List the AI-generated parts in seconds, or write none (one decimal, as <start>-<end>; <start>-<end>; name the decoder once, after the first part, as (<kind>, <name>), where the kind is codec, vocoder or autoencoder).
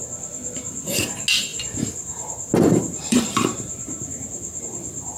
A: 1.5-4.6 (vocoder, BigVGAN v2)